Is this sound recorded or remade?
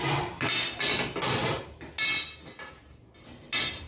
recorded